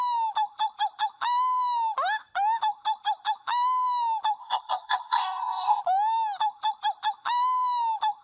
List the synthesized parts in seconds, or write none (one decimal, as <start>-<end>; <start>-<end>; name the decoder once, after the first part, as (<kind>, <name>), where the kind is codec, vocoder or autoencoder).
4.4-5.8 (codec, SNAC)